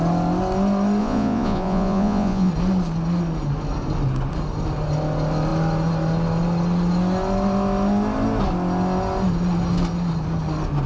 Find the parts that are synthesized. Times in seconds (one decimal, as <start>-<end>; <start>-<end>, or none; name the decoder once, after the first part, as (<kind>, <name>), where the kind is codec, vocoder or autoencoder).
1.0-2.5 (vocoder, Vocos)